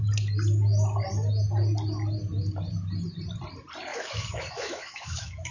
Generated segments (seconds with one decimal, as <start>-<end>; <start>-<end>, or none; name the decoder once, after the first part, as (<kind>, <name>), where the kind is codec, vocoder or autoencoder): 3.9-5.5 (autoencoder, DAC-VAE)